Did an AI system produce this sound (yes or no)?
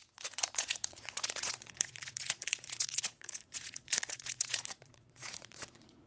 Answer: yes